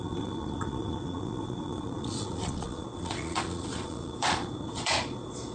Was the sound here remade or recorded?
remade